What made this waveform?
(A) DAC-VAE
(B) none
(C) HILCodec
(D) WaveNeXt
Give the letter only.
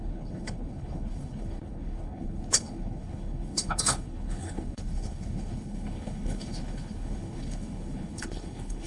C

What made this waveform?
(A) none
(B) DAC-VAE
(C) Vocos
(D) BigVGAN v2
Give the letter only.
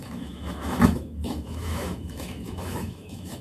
B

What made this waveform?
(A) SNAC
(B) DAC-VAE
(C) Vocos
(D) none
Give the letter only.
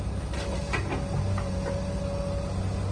D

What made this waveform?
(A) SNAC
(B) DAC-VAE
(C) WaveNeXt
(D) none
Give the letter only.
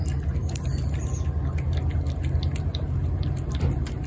D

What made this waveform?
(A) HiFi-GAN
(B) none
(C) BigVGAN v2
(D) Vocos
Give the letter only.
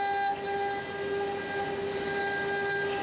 B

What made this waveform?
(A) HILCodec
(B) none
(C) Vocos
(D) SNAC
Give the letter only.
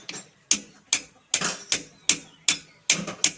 B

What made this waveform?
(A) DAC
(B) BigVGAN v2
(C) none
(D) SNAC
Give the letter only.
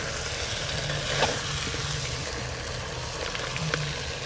C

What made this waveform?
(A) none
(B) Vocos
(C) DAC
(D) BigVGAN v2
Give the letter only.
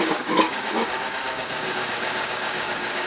C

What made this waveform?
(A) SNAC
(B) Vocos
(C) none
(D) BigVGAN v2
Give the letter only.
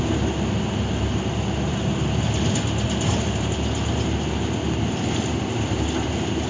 C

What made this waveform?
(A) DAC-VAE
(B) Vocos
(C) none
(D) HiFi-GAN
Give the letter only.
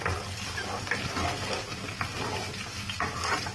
C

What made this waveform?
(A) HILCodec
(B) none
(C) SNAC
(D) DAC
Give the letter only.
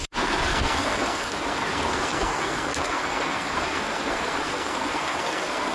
C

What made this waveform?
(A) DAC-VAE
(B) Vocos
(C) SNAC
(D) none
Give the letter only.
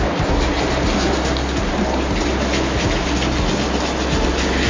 D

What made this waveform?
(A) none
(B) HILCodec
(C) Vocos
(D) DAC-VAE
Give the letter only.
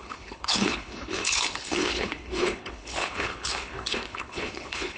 B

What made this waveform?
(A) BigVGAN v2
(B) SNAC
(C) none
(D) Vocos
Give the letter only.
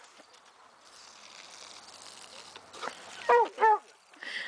C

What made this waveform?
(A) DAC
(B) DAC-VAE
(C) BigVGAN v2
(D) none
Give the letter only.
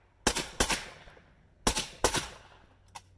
D